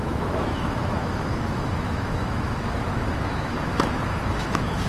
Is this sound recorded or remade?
remade